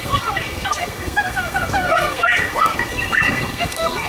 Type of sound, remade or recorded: remade